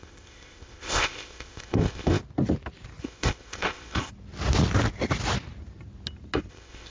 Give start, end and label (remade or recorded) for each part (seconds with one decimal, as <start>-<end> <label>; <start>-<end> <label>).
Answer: 0.0-2.2 remade; 2.2-3.0 recorded; 3.0-4.1 remade; 4.1-6.5 recorded; 6.5-6.9 remade